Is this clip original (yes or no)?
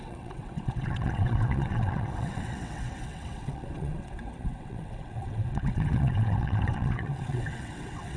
no